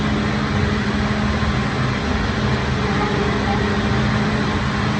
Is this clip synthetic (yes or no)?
no